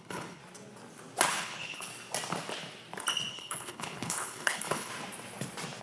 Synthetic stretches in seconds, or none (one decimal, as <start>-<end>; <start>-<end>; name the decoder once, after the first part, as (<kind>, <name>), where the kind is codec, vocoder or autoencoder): 0.0-0.4 (codec, HILCodec); 1.3-1.9; 3.3-4.9